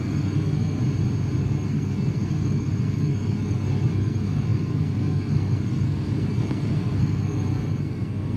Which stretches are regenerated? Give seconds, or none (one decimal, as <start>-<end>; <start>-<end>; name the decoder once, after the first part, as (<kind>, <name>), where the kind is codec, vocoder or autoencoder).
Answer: 0.0-0.8 (codec, SNAC); 1.4-8.4